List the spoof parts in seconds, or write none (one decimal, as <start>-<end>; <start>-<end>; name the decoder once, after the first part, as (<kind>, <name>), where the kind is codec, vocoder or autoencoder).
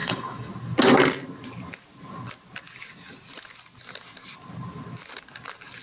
0.0-0.5 (codec, DAC)